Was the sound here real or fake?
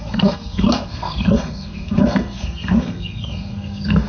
fake